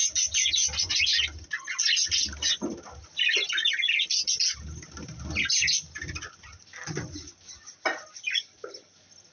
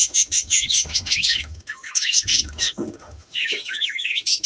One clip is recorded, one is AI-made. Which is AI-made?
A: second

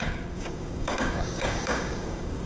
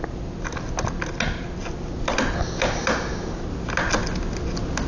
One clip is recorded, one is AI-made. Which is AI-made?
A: first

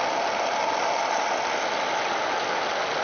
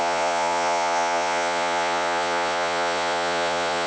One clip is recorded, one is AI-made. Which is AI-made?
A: second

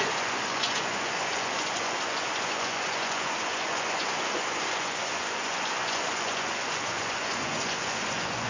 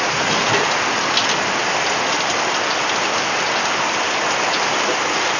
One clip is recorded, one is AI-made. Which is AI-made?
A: first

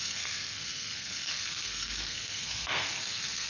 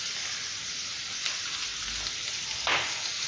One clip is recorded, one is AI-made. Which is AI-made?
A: first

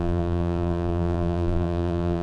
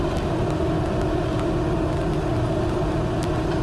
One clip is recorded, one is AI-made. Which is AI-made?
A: first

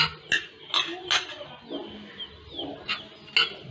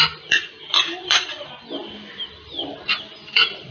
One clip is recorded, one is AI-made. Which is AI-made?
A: second